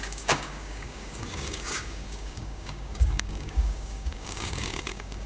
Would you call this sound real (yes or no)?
no